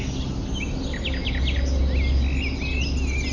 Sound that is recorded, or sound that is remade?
recorded